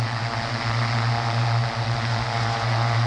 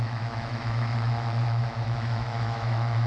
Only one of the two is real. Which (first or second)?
first